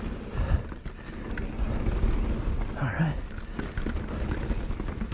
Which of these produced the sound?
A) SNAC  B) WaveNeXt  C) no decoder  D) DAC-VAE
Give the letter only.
C